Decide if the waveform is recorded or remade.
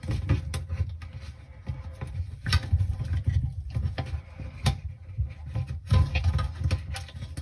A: recorded